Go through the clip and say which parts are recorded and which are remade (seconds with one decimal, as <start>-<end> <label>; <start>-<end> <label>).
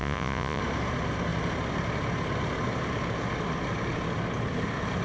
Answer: 0.0-0.6 remade; 0.6-5.0 recorded